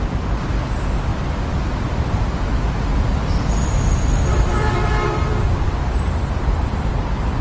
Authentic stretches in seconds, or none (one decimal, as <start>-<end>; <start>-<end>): 0.0-1.1; 2.2-4.3; 6.9-7.4